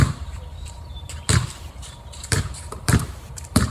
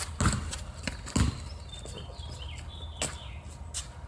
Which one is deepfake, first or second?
first